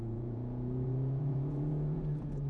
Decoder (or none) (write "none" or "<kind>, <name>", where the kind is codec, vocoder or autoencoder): vocoder, Vocos